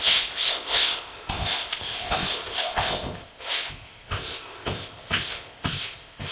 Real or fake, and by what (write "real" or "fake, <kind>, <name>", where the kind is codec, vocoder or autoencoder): fake, codec, ZipCodec